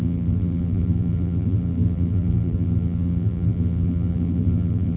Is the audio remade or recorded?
remade